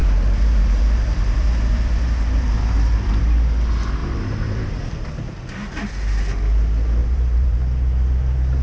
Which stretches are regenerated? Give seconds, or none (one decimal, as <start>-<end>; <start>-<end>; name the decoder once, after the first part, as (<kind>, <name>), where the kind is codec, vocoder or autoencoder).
0.0-3.2 (vocoder, BigVGAN v2); 4.0-5.1; 7.0-7.6